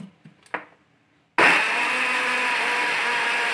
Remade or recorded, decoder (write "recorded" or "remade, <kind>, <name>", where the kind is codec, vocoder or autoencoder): recorded